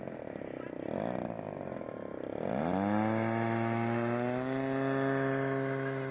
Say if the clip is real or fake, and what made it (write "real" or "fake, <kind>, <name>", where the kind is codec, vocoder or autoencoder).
real